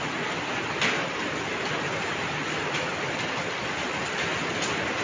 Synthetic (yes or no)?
no